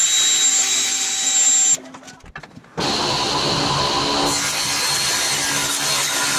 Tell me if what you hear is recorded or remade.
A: recorded